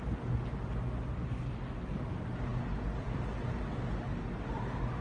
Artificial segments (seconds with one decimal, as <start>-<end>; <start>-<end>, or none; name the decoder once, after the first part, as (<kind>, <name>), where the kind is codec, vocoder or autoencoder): none